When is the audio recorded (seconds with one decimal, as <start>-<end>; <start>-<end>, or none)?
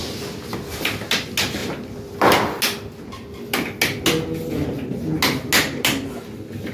0.0-6.7